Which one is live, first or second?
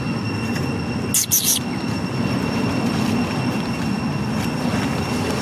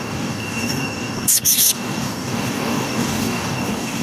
first